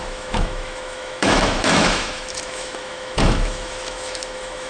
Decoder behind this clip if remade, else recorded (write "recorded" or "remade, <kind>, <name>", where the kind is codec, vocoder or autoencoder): remade, autoencoder, DAC-VAE